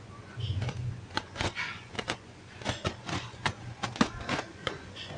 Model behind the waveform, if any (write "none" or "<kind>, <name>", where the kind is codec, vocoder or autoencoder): vocoder, Vocos